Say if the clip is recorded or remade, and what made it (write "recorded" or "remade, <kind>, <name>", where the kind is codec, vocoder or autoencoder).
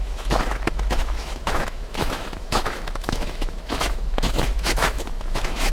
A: remade, autoencoder, DAC-VAE